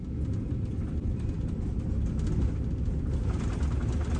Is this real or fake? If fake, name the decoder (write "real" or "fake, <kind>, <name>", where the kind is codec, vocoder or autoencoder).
real